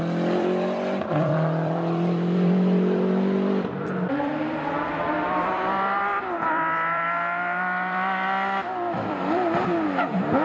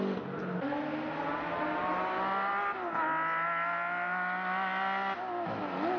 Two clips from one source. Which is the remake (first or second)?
first